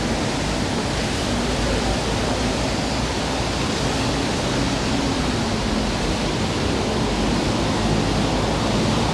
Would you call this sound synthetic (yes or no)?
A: no